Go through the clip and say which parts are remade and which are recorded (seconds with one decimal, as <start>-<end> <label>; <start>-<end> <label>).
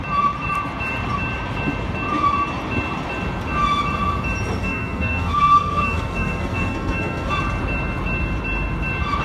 0.0-4.6 recorded; 4.6-7.3 remade; 7.3-9.2 recorded